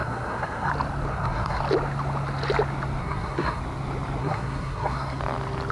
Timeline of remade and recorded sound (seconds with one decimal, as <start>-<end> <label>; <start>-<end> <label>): 0.0-0.7 remade; 0.7-1.1 recorded; 1.1-1.6 remade; 1.6-3.0 recorded; 3.0-3.6 remade; 3.6-4.2 recorded; 4.2-5.2 remade; 5.2-5.7 recorded